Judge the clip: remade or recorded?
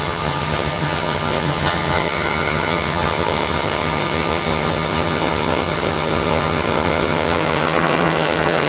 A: remade